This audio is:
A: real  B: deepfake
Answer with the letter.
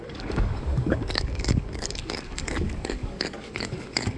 B